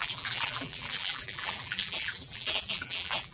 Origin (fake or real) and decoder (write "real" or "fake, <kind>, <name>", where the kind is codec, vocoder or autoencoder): fake, vocoder, BigVGAN v2